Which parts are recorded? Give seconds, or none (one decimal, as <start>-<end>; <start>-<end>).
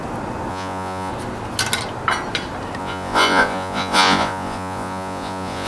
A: 0.0-0.5; 1.1-2.8